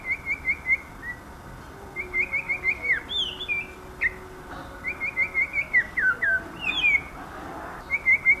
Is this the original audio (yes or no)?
yes